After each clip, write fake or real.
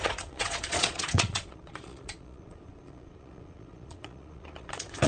fake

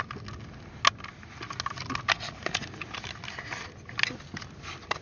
real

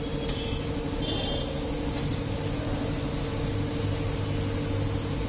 real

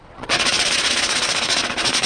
fake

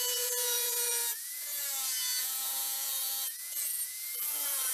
fake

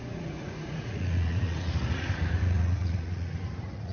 fake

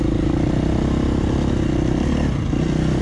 real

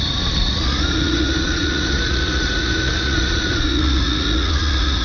fake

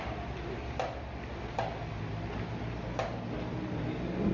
real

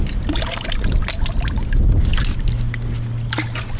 real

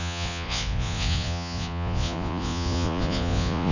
fake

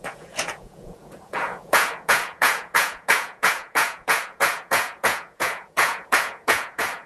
fake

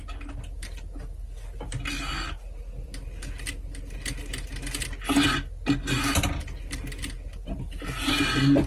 real